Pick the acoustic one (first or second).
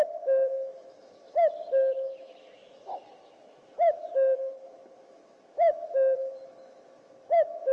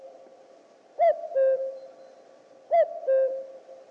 second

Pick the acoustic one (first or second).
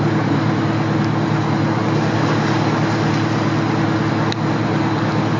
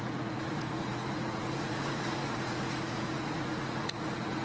first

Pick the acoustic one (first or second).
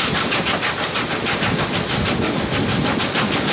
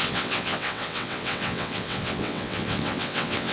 first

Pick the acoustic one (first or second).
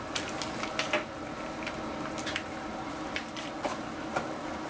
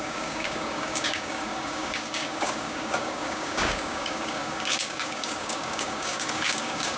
first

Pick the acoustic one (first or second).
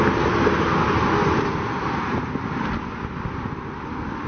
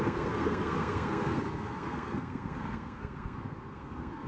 first